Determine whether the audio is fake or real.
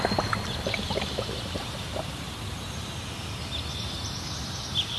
real